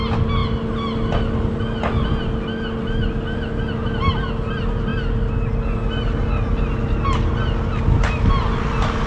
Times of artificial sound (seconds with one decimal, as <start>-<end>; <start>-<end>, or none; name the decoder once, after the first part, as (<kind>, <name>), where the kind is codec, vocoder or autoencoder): none